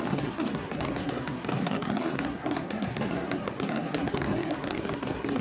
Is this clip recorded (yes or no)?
no